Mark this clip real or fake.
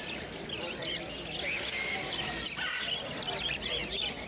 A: real